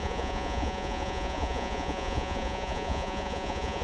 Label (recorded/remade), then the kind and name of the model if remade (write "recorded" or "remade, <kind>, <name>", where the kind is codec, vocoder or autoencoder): remade, vocoder, Vocos